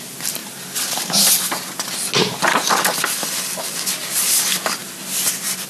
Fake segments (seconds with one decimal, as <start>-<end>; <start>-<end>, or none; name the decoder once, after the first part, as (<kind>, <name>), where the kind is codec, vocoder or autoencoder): none

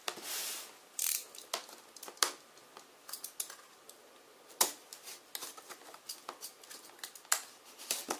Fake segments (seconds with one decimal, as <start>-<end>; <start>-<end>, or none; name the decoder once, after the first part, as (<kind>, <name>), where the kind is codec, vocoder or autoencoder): none